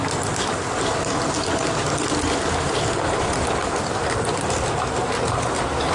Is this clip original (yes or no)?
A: yes